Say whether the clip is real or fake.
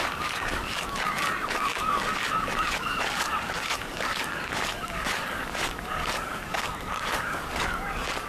fake